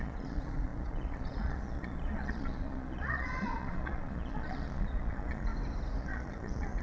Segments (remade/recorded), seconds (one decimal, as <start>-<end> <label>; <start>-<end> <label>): 0.0-5.5 remade; 5.5-6.0 recorded; 6.0-6.8 remade

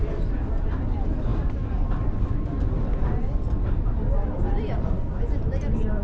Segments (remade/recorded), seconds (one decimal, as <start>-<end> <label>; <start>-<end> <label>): 0.0-6.0 recorded

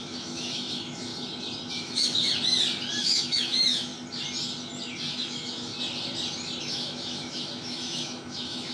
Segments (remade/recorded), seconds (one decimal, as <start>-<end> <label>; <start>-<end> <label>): 0.0-1.1 remade; 1.1-1.7 recorded; 1.7-2.3 remade; 2.3-3.0 recorded; 3.0-3.9 remade; 3.9-5.1 recorded; 5.1-5.7 remade; 5.7-6.7 recorded; 6.7-8.7 remade

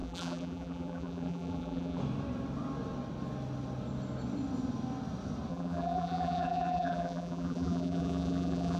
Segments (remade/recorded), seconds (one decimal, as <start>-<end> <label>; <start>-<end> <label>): 0.0-2.0 remade; 2.0-5.5 recorded; 5.5-8.8 remade

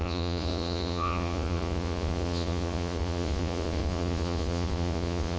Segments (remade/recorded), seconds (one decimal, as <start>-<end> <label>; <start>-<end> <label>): 0.0-5.4 remade

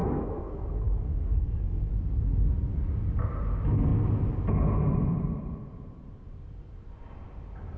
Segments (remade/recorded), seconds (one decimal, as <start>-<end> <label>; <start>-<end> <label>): 0.0-1.9 remade; 1.9-7.8 recorded

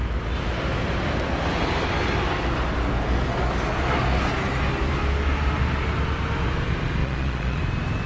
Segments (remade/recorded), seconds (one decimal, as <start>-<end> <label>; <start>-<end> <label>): 0.0-7.0 recorded; 7.0-7.6 remade; 7.6-8.1 recorded